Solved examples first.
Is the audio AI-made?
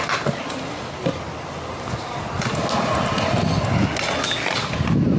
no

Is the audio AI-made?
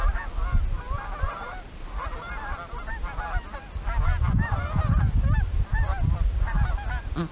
no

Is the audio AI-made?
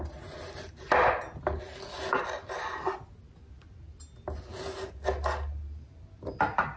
no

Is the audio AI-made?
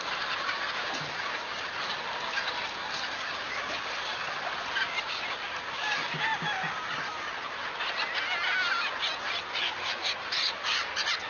no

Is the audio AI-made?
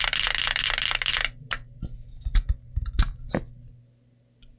no